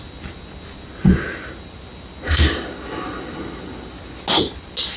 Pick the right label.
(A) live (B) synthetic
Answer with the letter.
A